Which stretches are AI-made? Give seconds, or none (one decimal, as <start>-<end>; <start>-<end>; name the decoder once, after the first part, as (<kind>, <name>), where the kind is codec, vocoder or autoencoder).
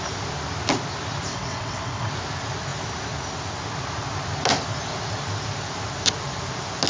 1.3-2.1 (vocoder, WaveNeXt)